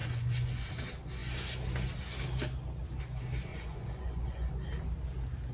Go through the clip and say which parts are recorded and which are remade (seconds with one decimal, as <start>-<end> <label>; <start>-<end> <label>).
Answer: 0.0-0.7 remade; 0.7-3.5 recorded; 3.5-4.5 remade; 4.5-5.5 recorded